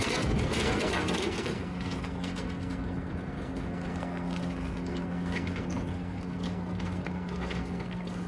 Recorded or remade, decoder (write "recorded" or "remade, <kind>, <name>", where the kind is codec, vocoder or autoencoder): remade, codec, SNAC